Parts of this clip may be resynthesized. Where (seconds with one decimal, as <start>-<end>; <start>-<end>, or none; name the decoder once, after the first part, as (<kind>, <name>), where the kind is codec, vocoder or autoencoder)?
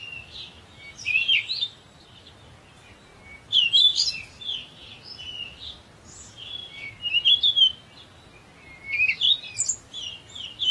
1.4-2.3 (vocoder, BigVGAN v2)